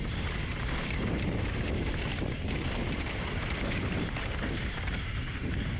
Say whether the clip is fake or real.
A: fake